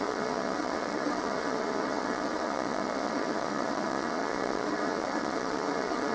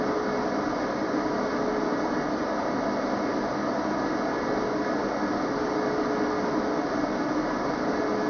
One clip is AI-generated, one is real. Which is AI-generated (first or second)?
first